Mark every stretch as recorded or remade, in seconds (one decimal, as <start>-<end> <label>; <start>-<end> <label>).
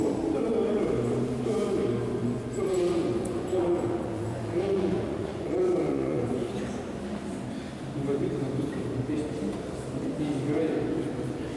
0.0-2.2 recorded; 2.2-6.5 remade; 6.5-11.6 recorded